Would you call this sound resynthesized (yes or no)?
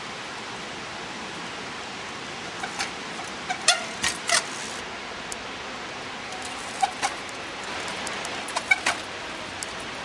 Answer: no